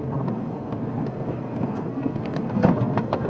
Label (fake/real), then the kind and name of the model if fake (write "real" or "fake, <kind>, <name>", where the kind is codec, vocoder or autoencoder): fake, codec, SNAC